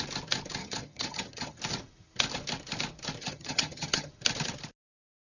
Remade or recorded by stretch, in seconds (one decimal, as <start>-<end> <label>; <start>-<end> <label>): 0.0-0.6 recorded; 0.6-1.6 remade; 1.6-3.2 recorded; 3.2-4.1 remade; 4.1-5.4 recorded